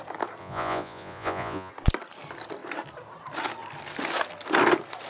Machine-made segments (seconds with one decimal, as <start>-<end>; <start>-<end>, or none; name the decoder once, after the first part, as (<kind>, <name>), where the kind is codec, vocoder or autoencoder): 0.4-1.7 (vocoder, Vocos)